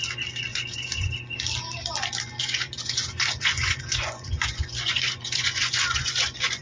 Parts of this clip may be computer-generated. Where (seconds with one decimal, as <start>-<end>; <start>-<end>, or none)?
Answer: 0.5-1.1; 2.4-6.6